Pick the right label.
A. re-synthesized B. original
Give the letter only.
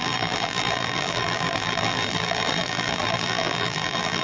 A